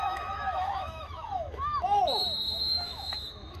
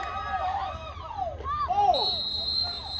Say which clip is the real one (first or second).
second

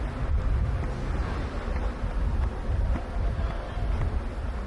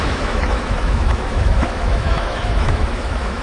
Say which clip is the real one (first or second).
first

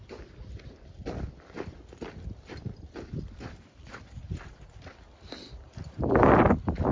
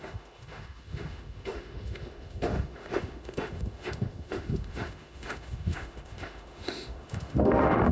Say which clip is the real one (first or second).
first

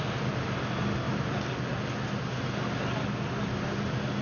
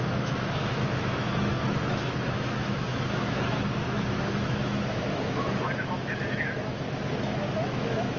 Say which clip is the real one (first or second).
first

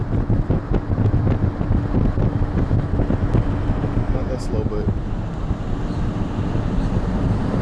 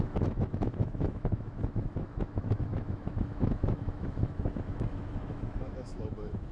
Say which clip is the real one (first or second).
first